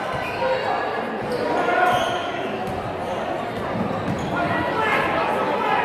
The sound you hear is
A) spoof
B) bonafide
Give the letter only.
B